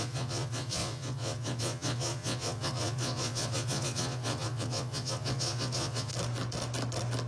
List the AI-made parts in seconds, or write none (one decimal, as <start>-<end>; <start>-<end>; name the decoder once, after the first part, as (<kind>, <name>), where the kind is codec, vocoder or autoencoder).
0.0-6.1 (vocoder, Vocos)